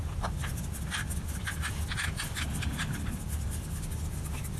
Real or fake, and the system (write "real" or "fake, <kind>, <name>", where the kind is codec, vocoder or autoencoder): real